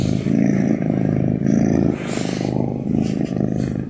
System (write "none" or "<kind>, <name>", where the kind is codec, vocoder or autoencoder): none